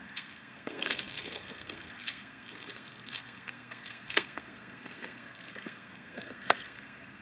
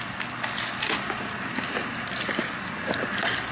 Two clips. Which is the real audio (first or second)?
second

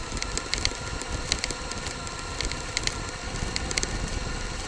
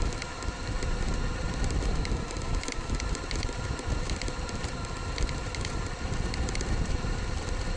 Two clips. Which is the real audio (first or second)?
first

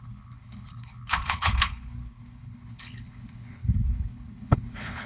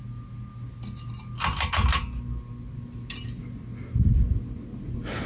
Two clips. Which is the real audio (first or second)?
second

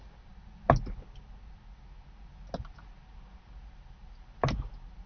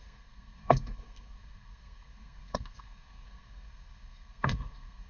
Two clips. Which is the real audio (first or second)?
first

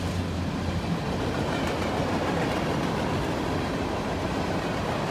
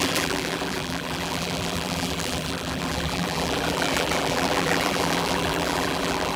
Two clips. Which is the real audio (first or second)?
first